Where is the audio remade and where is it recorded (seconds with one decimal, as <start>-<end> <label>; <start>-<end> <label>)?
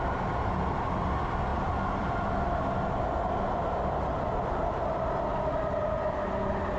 0.0-6.8 recorded